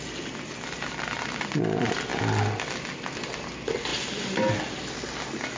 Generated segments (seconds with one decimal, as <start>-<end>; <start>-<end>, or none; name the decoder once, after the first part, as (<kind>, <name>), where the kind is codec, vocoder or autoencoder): none